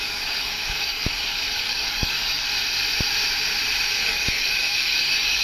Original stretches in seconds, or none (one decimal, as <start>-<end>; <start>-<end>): 2.5-3.9